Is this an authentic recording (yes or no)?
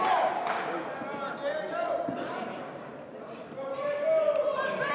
yes